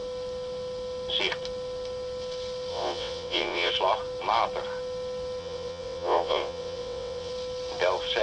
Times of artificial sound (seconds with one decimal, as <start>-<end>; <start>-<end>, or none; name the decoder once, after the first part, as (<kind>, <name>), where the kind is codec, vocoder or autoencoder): 2.7-3.7 (vocoder, WaveNeXt); 5.4-7.3